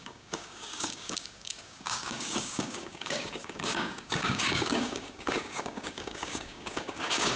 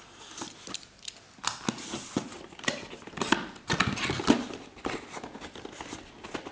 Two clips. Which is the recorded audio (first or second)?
second